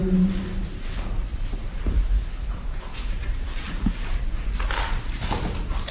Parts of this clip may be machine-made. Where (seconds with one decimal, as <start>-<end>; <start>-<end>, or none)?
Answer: 0.0-0.9; 1.3-4.2